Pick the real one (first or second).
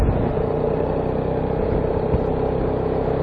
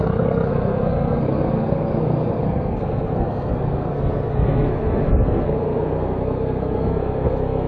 first